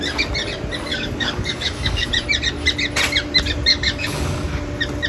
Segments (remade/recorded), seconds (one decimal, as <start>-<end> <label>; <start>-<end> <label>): 0.0-0.9 recorded; 0.9-2.1 remade; 2.1-3.7 recorded; 3.7-4.6 remade; 4.6-5.1 recorded